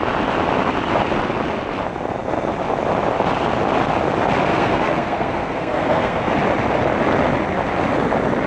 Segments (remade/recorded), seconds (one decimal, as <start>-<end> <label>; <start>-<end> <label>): 0.0-4.5 recorded; 4.5-6.3 remade; 6.3-8.5 recorded